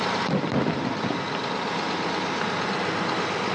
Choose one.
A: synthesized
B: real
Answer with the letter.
B